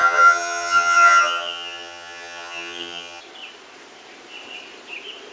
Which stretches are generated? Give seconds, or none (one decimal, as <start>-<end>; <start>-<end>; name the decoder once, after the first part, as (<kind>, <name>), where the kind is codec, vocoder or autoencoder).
0.0-3.2 (vocoder, HiFi-GAN)